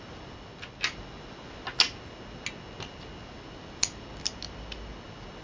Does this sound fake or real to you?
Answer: real